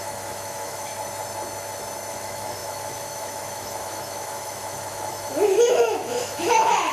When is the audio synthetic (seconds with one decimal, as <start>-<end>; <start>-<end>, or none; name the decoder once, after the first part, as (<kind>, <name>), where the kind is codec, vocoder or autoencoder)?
0.0-0.9 (autoencoder, DAC-VAE); 2.1-6.9